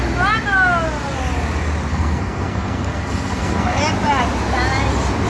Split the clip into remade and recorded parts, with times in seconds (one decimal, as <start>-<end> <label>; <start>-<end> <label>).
0.0-1.9 recorded; 1.9-3.8 remade; 3.8-5.3 recorded